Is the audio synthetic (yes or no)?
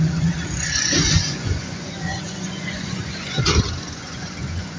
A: yes